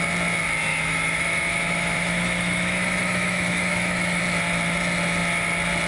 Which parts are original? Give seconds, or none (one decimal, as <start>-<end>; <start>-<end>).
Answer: 0.0-0.7; 4.2-5.9

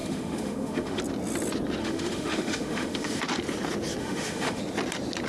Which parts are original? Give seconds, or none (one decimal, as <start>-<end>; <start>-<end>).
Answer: 1.0-1.8; 3.2-4.0; 4.6-5.3

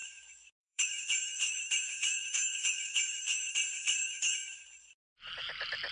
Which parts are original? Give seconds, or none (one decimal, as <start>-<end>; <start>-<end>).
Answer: 3.5-4.0; 4.6-5.9